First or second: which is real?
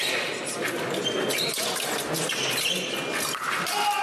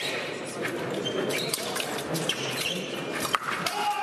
first